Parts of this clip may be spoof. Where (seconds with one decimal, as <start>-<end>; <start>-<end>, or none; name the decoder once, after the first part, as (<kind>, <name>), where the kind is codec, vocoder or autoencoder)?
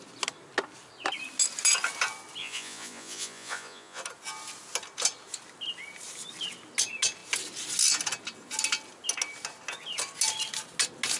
2.4-4.0 (vocoder, Vocos)